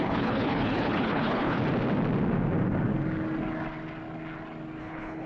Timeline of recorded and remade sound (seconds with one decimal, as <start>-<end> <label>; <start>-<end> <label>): 0.0-1.6 remade; 1.6-4.8 recorded; 4.8-5.3 remade